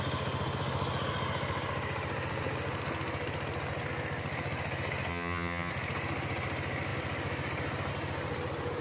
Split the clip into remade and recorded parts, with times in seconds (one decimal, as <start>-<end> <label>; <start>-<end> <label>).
0.0-5.1 recorded; 5.1-5.7 remade; 5.7-8.8 recorded